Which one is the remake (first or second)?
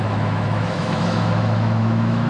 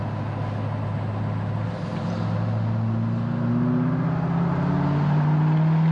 first